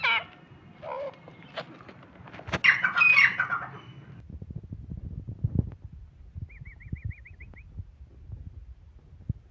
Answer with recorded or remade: recorded